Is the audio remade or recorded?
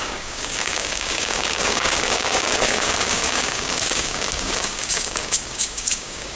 remade